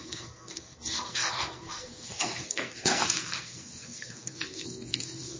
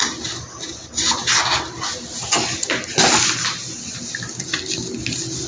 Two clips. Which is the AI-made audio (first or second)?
first